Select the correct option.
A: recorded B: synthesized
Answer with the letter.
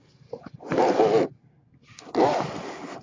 A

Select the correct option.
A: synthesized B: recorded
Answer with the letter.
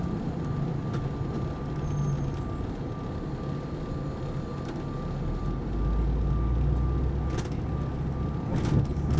B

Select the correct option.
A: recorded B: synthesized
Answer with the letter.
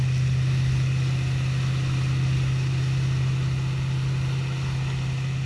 A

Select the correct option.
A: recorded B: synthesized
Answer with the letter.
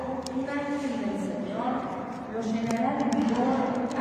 B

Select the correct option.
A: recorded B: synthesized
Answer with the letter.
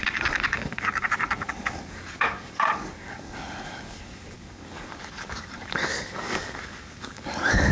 B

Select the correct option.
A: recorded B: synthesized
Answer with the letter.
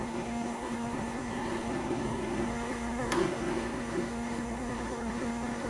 B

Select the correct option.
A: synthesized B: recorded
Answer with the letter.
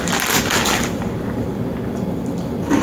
B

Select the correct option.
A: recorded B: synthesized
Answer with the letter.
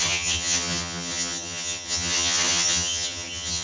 B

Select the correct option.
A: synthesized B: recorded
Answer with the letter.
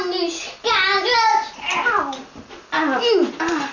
B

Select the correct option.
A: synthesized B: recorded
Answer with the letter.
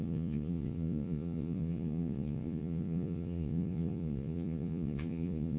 A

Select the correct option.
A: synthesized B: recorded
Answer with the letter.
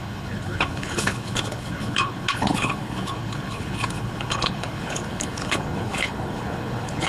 A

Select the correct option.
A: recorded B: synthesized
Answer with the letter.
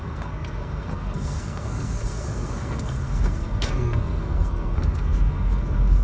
B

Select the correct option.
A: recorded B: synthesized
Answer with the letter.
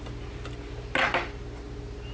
A